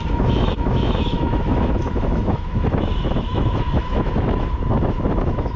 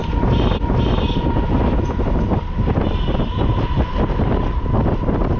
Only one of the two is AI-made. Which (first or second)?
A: first